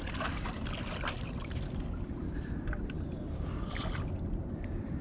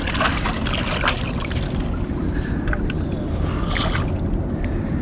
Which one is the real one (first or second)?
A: second